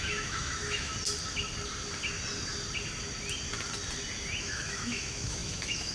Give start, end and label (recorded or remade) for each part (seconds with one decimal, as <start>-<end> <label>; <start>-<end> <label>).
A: 0.0-0.9 remade; 0.9-4.4 recorded; 4.4-5.9 remade